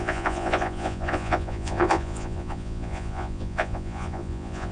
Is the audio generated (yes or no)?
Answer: yes